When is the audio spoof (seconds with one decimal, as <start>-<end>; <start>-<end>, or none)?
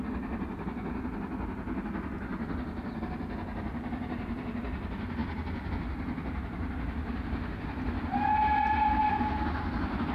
none